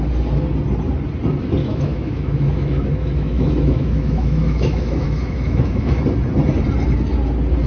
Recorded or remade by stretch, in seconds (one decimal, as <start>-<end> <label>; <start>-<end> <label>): 0.0-1.6 recorded; 1.6-6.0 remade; 6.0-7.7 recorded

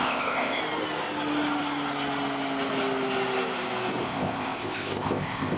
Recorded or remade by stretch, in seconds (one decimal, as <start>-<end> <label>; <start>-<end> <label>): 0.0-0.6 remade; 0.6-4.0 recorded; 4.0-5.6 remade